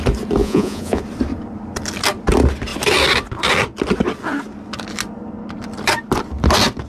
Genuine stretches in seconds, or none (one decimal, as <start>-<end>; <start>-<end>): 0.0-0.4; 1.0-6.9